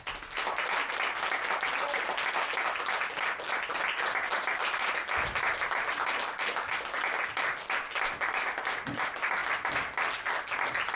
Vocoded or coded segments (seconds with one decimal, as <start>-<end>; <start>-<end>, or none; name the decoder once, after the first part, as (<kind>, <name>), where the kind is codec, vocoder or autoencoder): 4.3-4.9 (vocoder, BigVGAN v2)